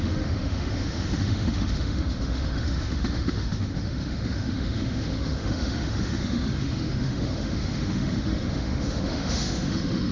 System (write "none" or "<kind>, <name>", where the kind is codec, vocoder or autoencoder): autoencoder, DAC-VAE